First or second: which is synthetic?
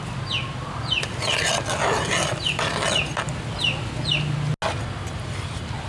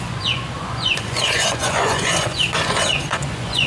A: second